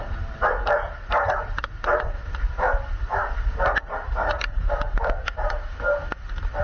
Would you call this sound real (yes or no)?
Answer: yes